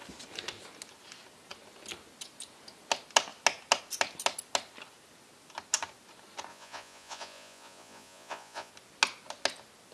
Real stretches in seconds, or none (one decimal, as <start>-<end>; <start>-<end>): 0.0-6.5; 8.7-9.9